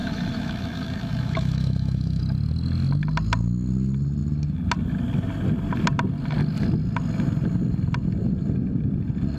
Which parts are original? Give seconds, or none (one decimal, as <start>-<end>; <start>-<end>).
2.2-9.4